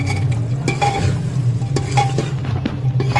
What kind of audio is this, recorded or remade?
recorded